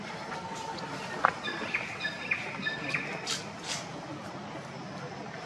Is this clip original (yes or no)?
yes